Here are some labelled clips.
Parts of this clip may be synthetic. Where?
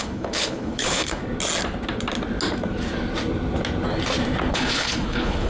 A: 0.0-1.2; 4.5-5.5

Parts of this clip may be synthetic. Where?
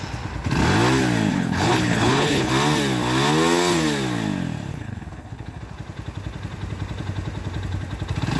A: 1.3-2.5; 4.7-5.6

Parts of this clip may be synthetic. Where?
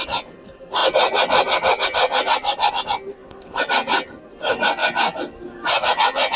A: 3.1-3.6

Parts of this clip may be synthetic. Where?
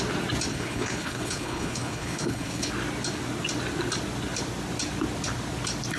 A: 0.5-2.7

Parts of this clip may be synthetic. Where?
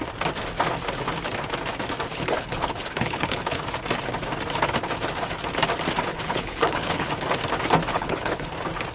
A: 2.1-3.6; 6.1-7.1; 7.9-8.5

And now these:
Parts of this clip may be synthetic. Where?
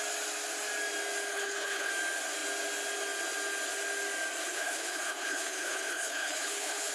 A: 1.3-1.9; 4.4-6.9